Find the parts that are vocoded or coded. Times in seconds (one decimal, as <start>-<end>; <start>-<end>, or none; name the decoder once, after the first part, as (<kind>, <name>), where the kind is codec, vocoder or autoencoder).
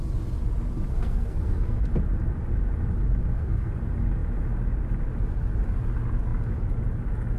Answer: 0.9-1.8 (codec, SNAC); 3.2-3.7